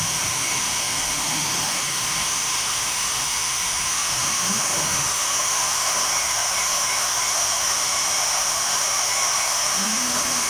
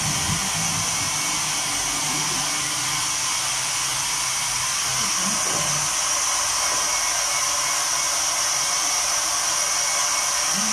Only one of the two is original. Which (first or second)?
second